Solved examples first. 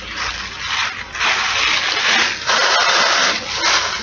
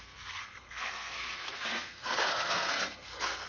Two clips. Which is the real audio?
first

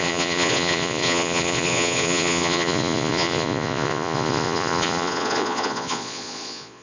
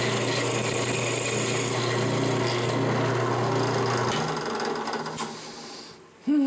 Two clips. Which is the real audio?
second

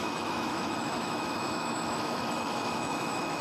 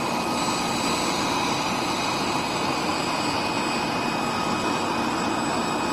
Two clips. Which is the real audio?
second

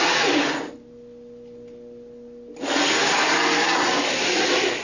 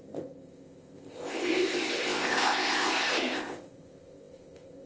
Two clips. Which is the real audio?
first